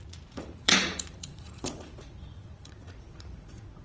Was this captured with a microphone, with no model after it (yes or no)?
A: no